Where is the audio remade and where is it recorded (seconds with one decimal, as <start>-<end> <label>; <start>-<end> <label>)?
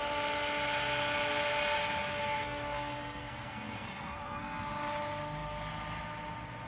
0.0-2.0 recorded; 2.0-4.7 remade; 4.7-6.7 recorded